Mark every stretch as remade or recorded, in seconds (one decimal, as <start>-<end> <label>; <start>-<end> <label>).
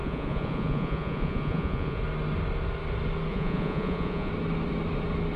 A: 0.0-2.0 remade; 2.0-3.3 recorded; 3.3-4.3 remade; 4.3-5.4 recorded